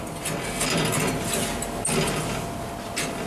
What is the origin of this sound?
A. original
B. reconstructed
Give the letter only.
A